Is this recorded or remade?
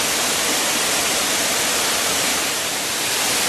recorded